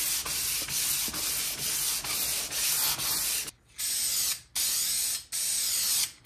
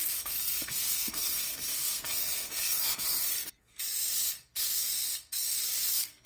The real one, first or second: first